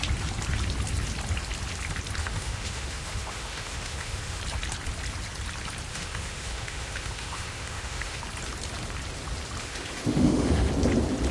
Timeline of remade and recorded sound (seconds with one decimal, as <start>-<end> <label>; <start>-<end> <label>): 0.0-2.2 recorded; 2.2-4.4 remade; 4.4-5.9 recorded; 5.9-8.2 remade; 8.2-9.6 recorded; 9.6-10.7 remade; 10.7-11.3 recorded